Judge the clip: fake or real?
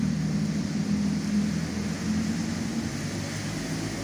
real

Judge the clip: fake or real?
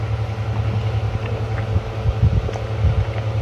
real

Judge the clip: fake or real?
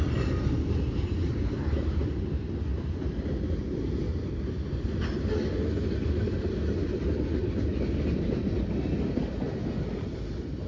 real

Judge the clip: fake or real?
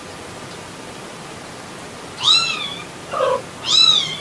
real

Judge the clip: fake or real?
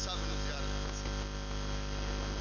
real